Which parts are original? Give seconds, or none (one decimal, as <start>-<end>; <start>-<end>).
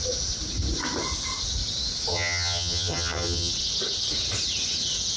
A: 0.0-2.1; 3.5-5.2